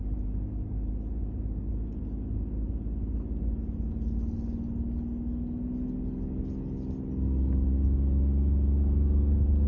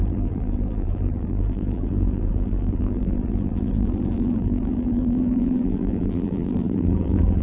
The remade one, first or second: second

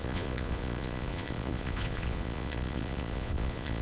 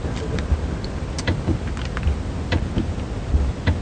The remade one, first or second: first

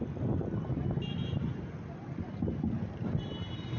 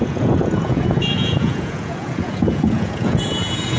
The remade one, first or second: second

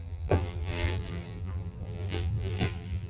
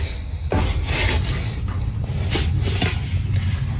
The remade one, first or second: first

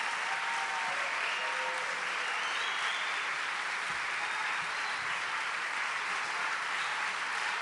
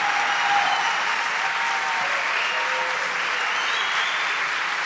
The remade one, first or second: first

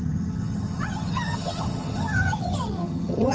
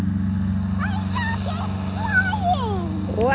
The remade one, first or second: first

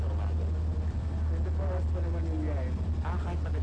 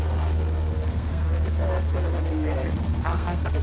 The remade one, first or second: second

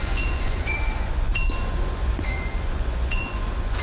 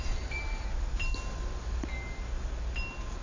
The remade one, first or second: first